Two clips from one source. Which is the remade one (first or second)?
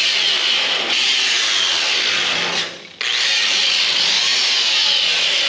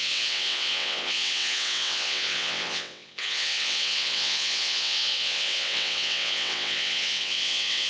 second